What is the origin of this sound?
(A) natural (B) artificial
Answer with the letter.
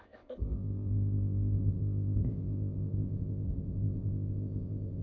B